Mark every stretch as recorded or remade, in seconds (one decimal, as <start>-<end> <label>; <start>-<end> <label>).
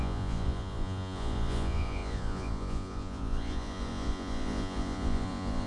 0.0-5.7 remade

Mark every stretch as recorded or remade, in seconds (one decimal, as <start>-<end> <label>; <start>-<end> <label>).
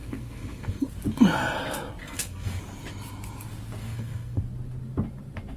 0.0-0.8 remade; 0.8-2.0 recorded; 2.0-2.6 remade; 2.6-3.8 recorded; 3.8-4.4 remade; 4.4-5.6 recorded